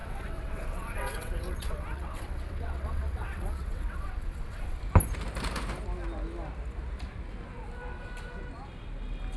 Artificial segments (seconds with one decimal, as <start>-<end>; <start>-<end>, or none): 0.0-4.8